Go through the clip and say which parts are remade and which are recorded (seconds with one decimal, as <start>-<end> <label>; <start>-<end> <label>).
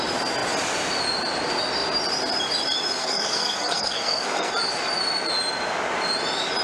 0.0-3.0 recorded; 3.0-4.5 remade; 4.5-6.6 recorded